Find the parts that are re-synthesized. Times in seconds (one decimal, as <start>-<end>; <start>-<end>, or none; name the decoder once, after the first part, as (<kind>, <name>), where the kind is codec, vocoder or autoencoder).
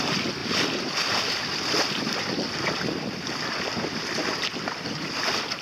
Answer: 0.4-2.6 (vocoder, BigVGAN v2)